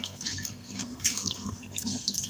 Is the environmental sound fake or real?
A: fake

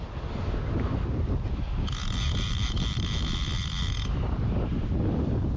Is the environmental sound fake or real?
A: real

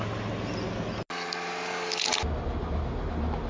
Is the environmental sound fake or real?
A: real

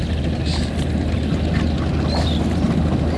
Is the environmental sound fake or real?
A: real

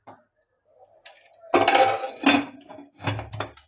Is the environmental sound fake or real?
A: real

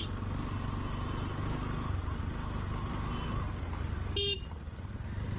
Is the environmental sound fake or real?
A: real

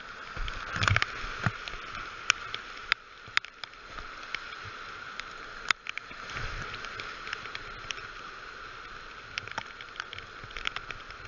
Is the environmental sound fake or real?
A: real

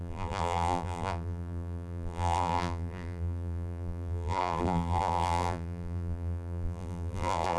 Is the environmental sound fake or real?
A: fake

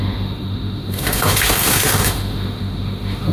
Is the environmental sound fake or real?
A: fake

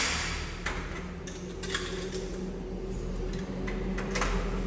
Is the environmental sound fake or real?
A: real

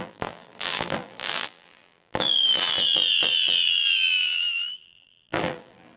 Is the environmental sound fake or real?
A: fake